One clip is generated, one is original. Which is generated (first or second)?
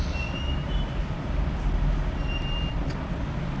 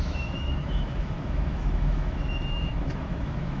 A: second